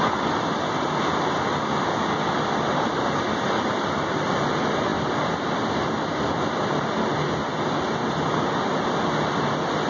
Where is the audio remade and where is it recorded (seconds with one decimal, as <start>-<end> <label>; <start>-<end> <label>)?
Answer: 0.0-9.9 recorded